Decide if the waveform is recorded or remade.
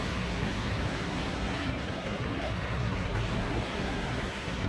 remade